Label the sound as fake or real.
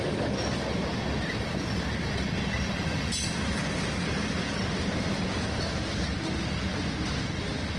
real